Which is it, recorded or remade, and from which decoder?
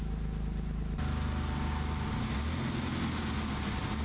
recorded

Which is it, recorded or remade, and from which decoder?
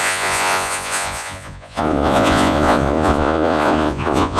remade, vocoder, Vocos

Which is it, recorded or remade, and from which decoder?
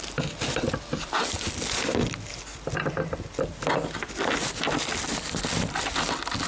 recorded